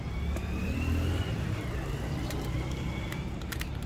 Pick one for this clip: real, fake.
fake